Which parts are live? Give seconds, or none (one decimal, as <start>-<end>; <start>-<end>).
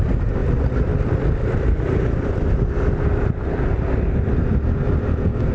0.0-5.5